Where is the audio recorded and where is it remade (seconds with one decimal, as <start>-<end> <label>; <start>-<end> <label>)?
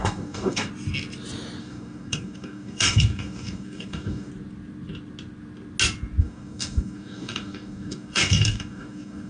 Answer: 0.0-0.7 remade; 0.7-1.6 recorded; 1.6-4.3 remade; 4.3-6.2 recorded; 6.2-9.3 remade